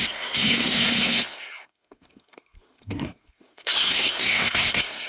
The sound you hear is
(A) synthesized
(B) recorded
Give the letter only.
A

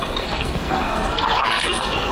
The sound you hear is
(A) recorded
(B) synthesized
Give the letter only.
B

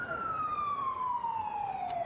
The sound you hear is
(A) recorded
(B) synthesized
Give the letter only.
B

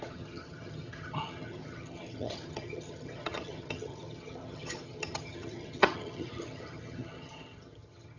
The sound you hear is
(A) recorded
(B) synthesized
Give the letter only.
B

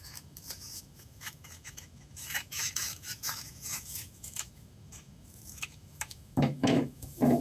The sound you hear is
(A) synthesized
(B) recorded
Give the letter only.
A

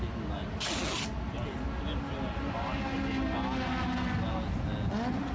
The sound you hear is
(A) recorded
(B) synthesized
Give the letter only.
A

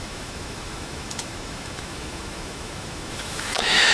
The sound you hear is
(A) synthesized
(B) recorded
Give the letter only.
A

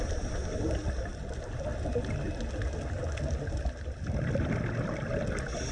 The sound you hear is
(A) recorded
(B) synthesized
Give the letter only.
A